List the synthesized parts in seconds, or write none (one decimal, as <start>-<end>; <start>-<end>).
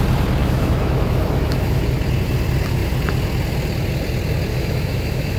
0.4-1.8; 4.5-5.4